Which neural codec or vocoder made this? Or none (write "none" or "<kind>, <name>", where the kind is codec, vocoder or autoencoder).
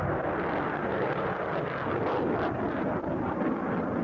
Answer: none